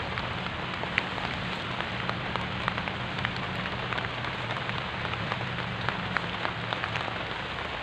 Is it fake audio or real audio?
real